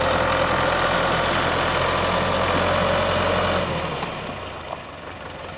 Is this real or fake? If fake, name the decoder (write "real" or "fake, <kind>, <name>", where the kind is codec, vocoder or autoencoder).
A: real